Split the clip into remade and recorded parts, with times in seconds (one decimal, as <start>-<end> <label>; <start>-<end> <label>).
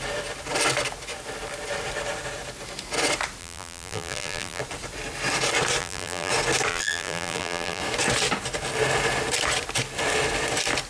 0.0-3.4 recorded; 3.4-4.6 remade; 4.6-5.8 recorded; 5.8-6.3 remade; 6.3-6.7 recorded; 6.7-7.8 remade; 7.8-10.9 recorded